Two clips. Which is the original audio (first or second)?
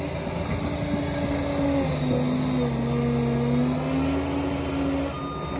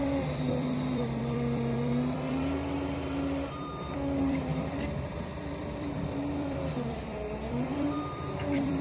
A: first